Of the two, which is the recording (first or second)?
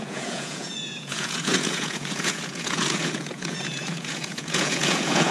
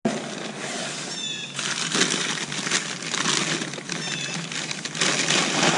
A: second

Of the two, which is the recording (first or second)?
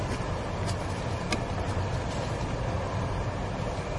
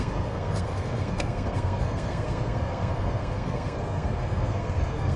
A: first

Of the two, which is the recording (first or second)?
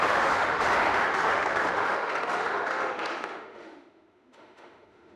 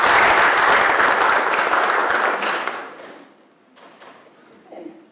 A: second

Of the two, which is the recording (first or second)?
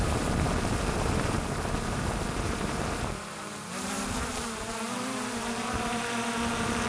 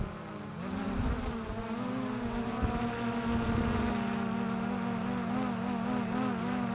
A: second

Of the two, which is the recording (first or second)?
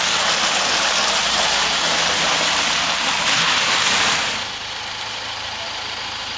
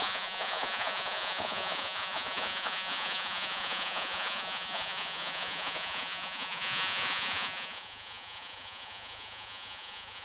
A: first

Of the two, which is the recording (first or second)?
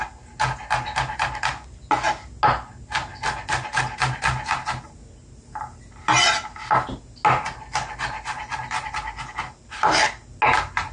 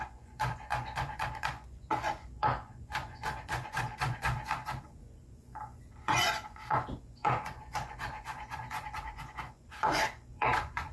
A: first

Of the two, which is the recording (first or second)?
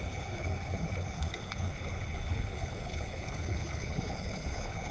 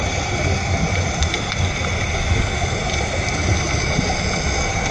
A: second